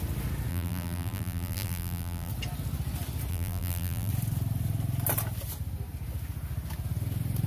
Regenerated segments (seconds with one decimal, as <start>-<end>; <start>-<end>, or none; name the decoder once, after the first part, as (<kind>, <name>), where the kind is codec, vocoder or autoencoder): 0.5-2.3 (vocoder, BigVGAN v2); 3.3-4.1